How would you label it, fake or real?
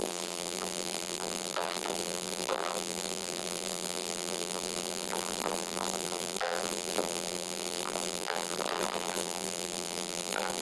fake